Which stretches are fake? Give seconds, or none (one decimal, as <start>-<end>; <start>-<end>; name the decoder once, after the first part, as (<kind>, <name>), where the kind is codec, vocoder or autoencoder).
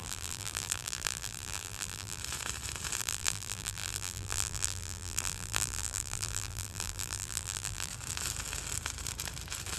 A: 0.0-2.2 (vocoder, BigVGAN v2); 3.0-7.9